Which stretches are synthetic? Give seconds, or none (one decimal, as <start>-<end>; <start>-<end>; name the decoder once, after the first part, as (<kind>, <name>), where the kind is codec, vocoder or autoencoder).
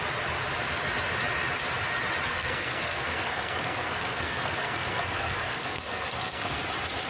2.3-6.6 (codec, SNAC)